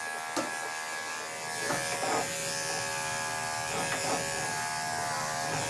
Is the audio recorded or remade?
recorded